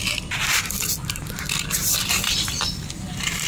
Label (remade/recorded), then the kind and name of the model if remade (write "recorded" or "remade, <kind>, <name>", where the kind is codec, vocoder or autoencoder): remade, vocoder, BigVGAN v2